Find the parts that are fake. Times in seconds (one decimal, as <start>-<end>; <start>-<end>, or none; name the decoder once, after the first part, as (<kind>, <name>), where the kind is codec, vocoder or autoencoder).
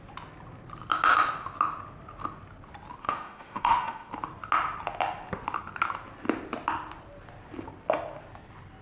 3.0-4.1 (autoencoder, DAC-VAE)